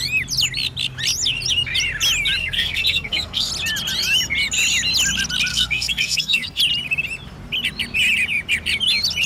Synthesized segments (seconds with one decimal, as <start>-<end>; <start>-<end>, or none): 2.4-3.5; 5.5-6.6